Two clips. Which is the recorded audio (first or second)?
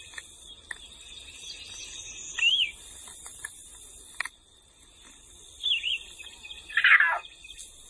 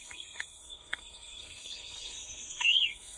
first